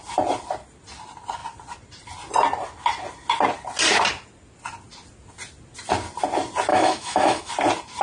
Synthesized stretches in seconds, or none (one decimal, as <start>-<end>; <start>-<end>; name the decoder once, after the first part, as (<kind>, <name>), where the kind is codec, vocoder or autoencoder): 6.7-7.5 (autoencoder, DAC-VAE)